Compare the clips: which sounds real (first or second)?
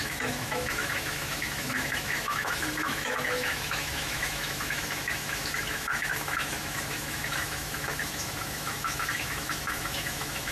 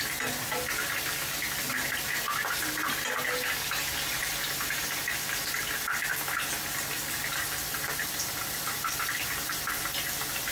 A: second